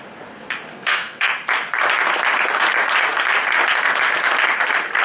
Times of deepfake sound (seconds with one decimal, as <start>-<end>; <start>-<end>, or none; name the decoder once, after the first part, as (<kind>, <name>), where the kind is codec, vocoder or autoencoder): 0.7-1.3 (codec, SNAC)